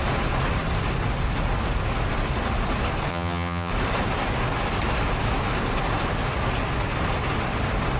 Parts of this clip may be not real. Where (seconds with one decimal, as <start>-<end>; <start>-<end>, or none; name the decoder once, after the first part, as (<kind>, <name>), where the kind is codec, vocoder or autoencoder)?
3.1-3.7 (vocoder, HiFi-GAN)

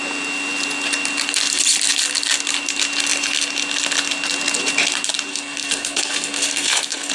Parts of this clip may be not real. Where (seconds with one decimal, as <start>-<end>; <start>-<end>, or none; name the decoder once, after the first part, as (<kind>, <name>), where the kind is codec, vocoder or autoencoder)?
5.3-7.1 (codec, SNAC)

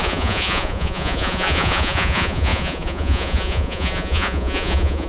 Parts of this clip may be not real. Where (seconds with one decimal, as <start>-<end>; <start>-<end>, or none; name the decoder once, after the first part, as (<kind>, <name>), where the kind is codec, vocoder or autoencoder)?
0.0-5.1 (vocoder, Vocos)

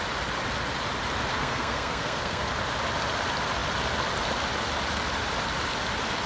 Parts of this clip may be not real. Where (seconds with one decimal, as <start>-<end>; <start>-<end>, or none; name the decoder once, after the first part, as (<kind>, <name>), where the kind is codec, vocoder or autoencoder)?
1.3-2.5 (codec, SNAC)

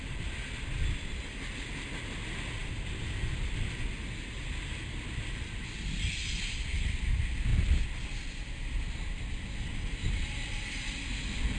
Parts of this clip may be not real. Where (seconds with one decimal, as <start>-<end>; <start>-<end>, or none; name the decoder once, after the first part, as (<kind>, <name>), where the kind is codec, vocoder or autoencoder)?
none

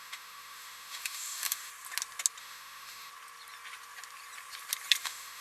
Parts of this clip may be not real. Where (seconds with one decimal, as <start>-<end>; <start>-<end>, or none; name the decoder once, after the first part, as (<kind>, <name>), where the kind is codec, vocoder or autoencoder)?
0.0-1.7 (autoencoder, DAC-VAE); 2.4-3.1; 5.0-5.4